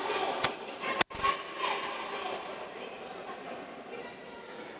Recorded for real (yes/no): yes